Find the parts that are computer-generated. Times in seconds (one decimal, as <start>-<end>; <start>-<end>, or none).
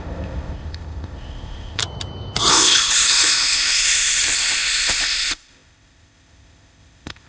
0.0-1.8; 2.5-7.3